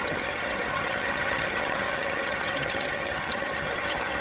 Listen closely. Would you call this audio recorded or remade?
remade